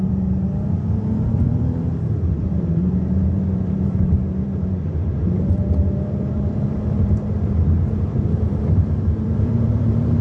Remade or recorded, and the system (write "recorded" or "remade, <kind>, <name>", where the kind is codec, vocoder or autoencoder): remade, vocoder, BigVGAN v2